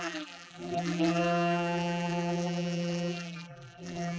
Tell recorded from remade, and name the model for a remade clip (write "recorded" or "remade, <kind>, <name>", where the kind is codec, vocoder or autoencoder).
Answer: remade, vocoder, BigVGAN v2